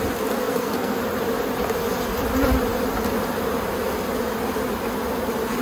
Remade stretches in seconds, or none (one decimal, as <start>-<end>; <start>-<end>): 0.4-1.0